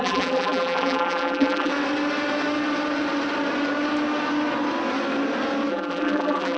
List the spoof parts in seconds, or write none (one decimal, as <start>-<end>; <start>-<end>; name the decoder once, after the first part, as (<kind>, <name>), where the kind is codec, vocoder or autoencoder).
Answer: 0.0-1.7 (vocoder, BigVGAN v2); 5.7-6.6